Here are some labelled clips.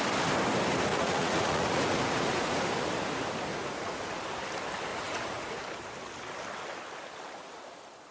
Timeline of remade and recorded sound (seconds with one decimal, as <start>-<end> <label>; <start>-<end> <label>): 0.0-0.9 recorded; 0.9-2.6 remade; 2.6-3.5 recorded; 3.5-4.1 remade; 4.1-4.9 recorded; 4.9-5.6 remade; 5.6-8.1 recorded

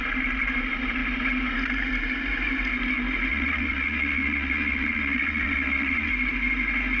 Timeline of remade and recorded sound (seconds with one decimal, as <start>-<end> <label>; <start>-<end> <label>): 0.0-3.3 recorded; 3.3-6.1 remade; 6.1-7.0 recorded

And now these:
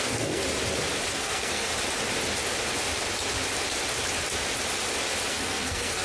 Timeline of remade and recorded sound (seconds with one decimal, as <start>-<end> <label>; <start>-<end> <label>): 0.0-0.4 remade; 0.4-1.1 recorded; 1.1-1.7 remade; 1.7-5.3 recorded; 5.3-6.0 remade

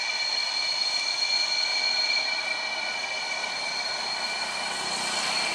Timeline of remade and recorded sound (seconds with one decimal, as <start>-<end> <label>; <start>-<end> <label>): 0.0-1.7 recorded; 1.7-2.2 remade; 2.2-3.4 recorded; 3.4-4.1 remade; 4.1-5.5 recorded

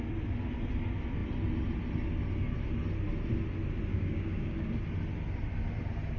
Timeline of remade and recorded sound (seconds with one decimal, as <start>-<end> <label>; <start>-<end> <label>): 0.0-3.9 recorded; 3.9-4.7 remade; 4.7-6.2 recorded

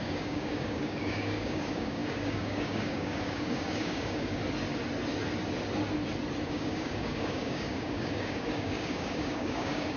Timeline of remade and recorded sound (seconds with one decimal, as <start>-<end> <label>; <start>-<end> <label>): 0.0-4.4 remade; 4.4-6.5 recorded; 6.5-10.0 remade

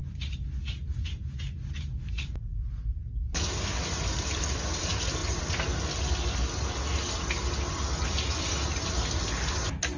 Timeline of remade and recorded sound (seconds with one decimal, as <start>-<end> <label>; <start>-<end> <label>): 0.0-10.0 recorded